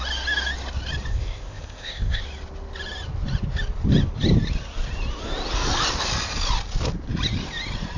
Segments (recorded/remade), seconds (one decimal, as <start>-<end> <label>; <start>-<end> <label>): 0.0-1.1 recorded; 1.1-2.2 remade; 2.2-8.0 recorded